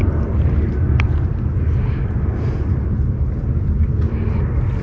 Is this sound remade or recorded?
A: recorded